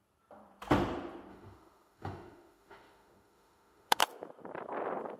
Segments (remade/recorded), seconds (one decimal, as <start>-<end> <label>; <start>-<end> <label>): 0.0-1.3 recorded; 1.3-4.0 remade; 4.0-5.2 recorded